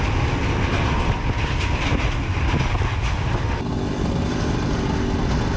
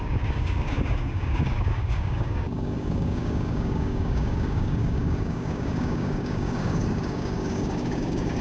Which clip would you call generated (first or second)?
second